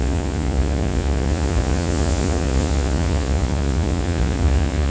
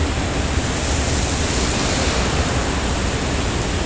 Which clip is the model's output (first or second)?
first